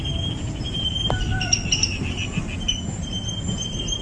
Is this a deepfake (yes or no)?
no